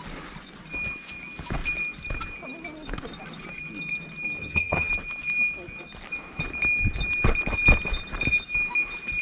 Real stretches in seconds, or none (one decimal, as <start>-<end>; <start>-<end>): 0.0-4.4; 4.9-9.2